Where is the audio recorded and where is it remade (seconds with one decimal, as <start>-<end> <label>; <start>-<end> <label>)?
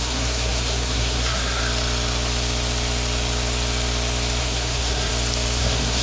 0.0-1.6 remade; 1.6-4.4 recorded; 4.4-5.1 remade; 5.1-5.6 recorded; 5.6-6.0 remade